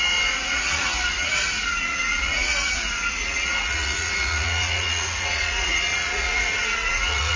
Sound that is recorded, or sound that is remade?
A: remade